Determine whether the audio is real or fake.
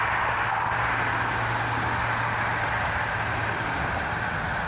real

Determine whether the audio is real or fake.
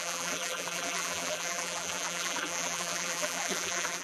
fake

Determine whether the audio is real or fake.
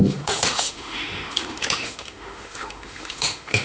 fake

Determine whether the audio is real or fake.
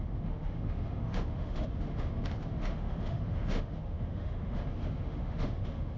fake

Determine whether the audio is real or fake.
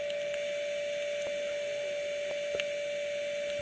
real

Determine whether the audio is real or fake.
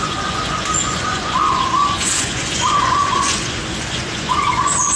fake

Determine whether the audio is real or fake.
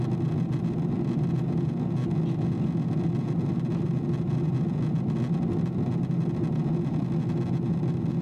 real